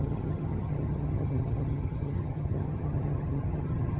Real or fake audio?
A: fake